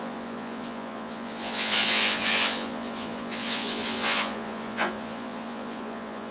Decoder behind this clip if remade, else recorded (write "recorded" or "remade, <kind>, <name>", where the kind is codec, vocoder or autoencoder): remade, vocoder, Vocos